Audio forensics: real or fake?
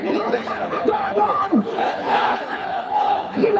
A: fake